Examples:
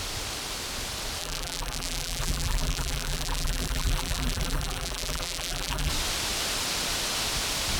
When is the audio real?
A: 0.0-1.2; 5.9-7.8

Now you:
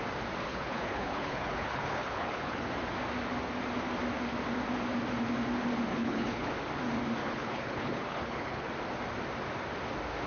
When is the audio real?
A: 0.0-0.5; 2.7-5.9; 6.5-7.2; 8.7-10.3

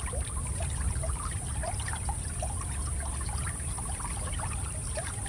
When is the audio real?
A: 0.0-5.3

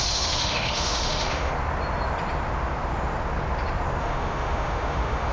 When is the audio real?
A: 1.5-4.0

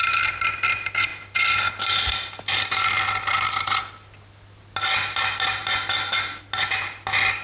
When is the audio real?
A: 0.0-7.4

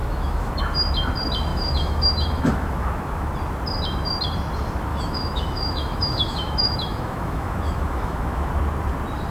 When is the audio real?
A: 0.6-1.5; 3.3-4.9; 8.5-9.3

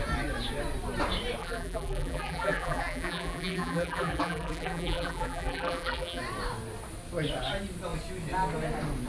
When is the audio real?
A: 0.0-1.4; 6.2-9.1